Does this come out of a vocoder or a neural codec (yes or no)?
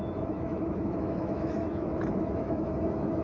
yes